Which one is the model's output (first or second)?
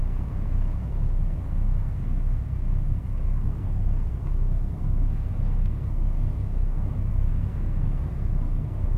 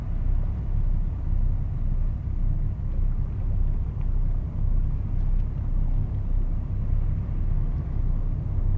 first